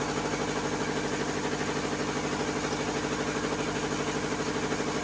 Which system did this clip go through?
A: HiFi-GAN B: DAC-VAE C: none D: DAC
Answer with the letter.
C